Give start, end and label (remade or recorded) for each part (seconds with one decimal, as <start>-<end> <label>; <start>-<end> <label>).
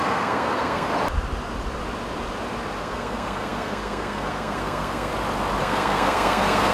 0.0-0.9 remade; 0.9-2.8 recorded; 2.8-5.1 remade; 5.1-5.6 recorded; 5.6-6.7 remade